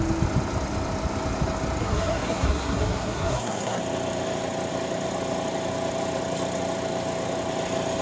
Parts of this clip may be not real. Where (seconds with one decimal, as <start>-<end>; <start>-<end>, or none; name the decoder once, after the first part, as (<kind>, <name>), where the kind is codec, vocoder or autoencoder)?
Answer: 1.8-3.8 (codec, SNAC)